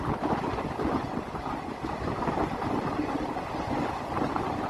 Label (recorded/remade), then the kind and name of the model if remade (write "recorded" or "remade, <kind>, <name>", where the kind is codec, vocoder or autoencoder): recorded